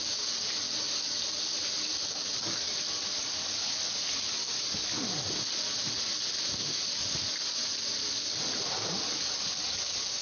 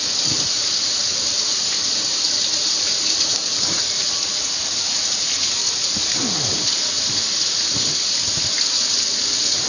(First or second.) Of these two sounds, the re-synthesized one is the second